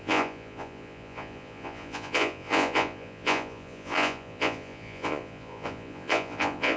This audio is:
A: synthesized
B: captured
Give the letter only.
A